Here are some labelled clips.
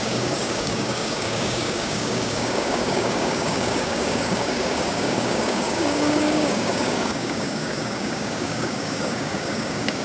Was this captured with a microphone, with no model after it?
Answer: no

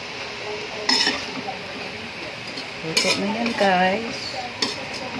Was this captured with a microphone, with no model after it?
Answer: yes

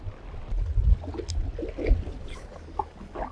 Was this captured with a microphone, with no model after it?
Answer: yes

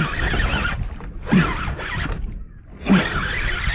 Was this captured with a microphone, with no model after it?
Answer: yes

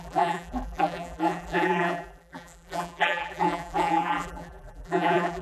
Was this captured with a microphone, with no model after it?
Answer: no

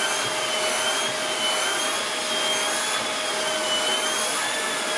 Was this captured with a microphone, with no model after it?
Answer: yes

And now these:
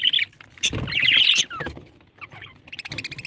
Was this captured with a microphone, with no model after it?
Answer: yes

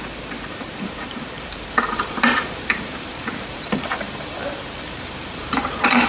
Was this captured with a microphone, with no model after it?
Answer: no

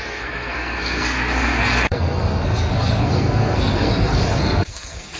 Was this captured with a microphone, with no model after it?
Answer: no